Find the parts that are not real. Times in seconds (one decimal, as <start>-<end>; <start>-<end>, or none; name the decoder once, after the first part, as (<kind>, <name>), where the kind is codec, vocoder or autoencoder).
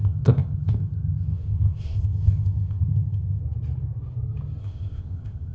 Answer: 0.0-3.4 (codec, ZipCodec); 4.6-5.5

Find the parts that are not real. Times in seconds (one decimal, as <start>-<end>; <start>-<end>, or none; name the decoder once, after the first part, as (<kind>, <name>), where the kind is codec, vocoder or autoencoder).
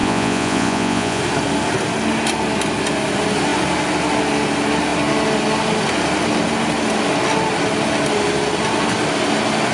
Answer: 0.0-1.2 (vocoder, Vocos)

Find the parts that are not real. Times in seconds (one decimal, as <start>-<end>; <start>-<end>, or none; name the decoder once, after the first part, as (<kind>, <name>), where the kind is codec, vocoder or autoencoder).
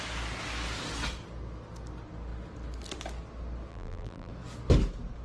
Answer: 3.7-4.3 (vocoder, BigVGAN v2)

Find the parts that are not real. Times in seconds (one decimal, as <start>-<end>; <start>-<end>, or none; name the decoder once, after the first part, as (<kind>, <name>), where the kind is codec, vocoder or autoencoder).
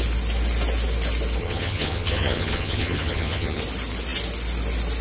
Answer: 1.4-3.6 (vocoder, HiFi-GAN)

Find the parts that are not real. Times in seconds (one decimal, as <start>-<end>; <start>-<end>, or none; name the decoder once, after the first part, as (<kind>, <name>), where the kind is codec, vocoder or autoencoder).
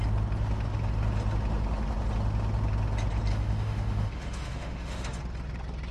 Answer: 3.3-5.2 (autoencoder, DAC-VAE)